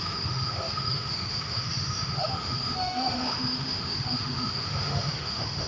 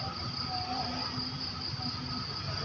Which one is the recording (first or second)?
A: second